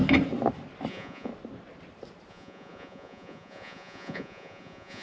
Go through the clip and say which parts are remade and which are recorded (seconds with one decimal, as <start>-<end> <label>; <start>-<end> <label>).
0.0-0.9 recorded; 0.9-1.3 remade; 1.3-2.3 recorded; 2.3-5.0 remade